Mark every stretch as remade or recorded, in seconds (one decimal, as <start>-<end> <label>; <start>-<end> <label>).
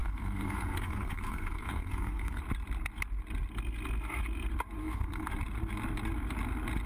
0.0-2.4 remade; 2.4-4.8 recorded; 4.8-5.3 remade; 5.3-6.9 recorded